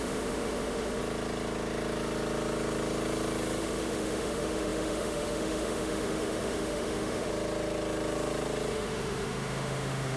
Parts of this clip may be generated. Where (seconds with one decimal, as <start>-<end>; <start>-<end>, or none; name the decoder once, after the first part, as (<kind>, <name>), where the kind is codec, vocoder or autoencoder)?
0.0-1.0 (autoencoder, DAC-VAE); 3.6-7.3; 8.7-10.2